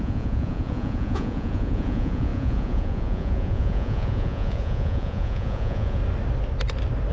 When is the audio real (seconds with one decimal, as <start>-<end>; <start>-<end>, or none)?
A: 6.0-7.1